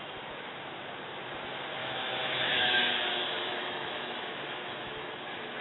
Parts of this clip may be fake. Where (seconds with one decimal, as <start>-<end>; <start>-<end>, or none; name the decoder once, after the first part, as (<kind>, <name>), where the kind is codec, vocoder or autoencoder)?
1.8-5.1 (autoencoder, DAC-VAE)